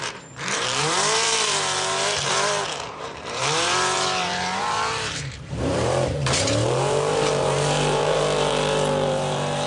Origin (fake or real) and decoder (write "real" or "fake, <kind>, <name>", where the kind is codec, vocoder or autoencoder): fake, vocoder, BigVGAN v2